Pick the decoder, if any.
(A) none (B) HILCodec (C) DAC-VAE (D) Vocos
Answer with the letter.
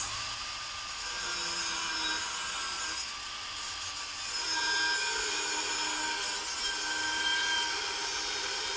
A